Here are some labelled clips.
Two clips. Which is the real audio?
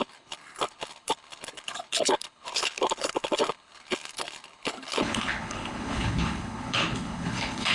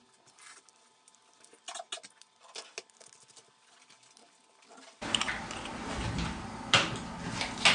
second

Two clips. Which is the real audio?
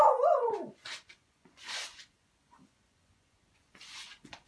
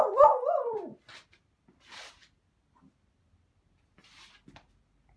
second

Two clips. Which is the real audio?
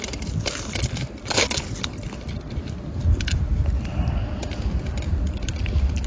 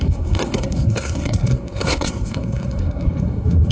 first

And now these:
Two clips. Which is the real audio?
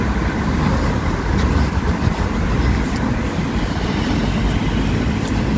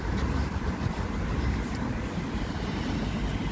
first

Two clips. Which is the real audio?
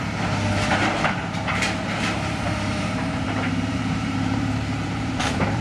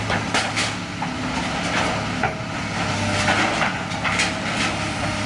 second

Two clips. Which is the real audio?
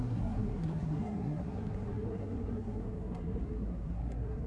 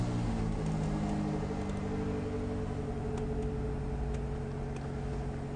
second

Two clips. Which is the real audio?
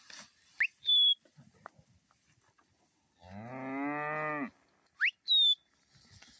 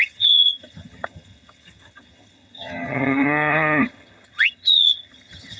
first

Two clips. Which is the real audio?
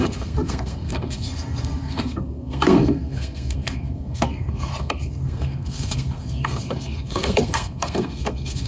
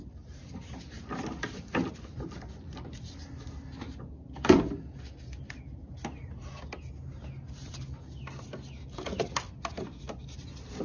second